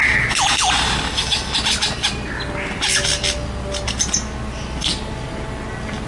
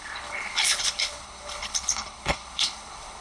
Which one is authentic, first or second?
first